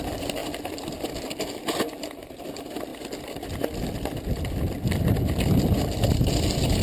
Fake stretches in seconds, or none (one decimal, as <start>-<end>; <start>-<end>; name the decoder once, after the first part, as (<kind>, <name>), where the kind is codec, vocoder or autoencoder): none